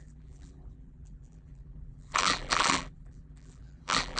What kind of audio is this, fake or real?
fake